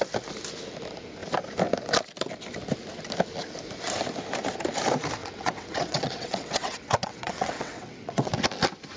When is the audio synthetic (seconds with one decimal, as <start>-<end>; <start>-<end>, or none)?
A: 5.2-8.3